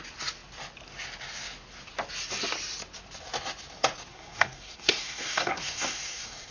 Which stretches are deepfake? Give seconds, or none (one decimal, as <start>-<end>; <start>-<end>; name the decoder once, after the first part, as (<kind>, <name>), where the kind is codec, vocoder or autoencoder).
4.1-6.5 (codec, SNAC)